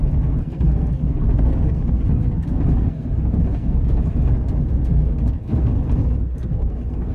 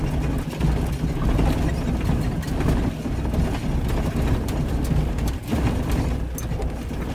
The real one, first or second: second